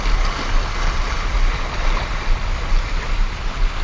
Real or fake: real